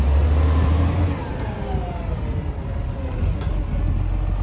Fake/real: real